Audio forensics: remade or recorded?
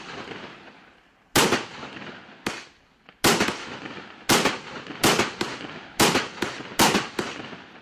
recorded